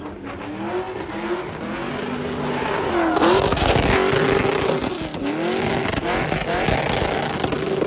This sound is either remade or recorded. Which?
recorded